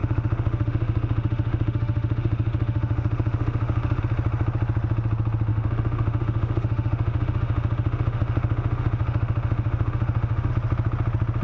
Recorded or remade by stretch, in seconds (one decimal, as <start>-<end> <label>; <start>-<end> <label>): 0.0-4.0 remade; 4.0-5.5 recorded; 5.5-10.5 remade; 10.5-11.4 recorded